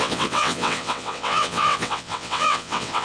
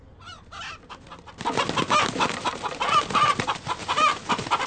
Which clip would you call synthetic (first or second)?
first